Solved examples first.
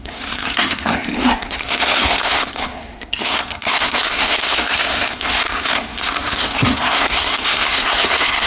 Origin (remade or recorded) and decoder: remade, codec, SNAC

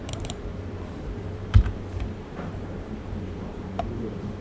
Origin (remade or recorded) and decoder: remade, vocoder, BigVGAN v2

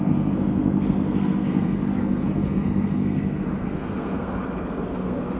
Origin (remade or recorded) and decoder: remade, codec, SNAC